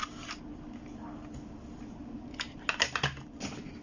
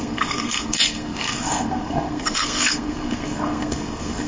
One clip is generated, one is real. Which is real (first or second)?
first